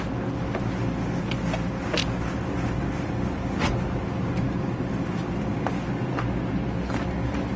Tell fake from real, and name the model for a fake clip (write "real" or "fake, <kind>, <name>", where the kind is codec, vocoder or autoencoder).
real